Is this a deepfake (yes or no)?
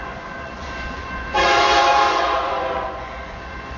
yes